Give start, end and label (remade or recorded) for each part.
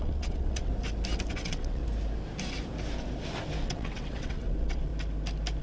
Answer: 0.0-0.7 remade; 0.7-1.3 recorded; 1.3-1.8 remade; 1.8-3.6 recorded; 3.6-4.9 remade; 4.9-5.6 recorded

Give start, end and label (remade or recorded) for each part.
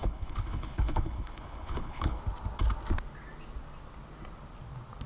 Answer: 0.0-2.2 remade; 2.2-5.1 recorded